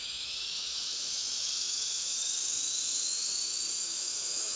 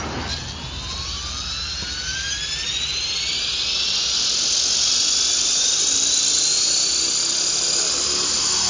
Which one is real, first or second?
second